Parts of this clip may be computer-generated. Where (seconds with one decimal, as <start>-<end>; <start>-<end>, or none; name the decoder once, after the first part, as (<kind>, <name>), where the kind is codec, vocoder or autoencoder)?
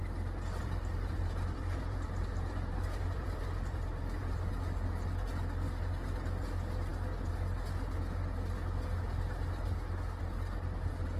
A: 0.6-4.5 (vocoder, BigVGAN v2)